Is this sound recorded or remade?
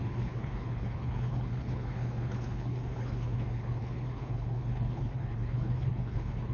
remade